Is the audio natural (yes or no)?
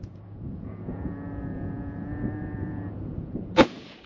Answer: no